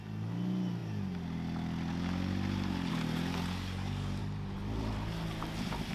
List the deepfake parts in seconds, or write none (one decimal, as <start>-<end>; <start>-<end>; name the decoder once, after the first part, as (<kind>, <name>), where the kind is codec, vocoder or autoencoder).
none